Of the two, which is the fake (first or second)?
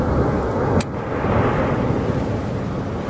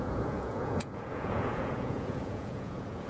second